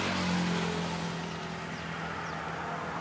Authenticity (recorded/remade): recorded